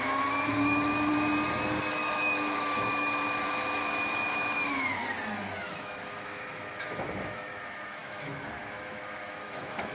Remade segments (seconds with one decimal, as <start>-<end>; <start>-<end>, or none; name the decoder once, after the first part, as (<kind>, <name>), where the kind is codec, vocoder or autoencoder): 0.0-1.1 (autoencoder, DAC-VAE); 1.9-5.0; 5.6-9.9